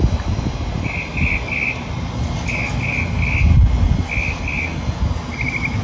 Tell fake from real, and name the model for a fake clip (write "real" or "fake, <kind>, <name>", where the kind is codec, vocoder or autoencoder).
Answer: real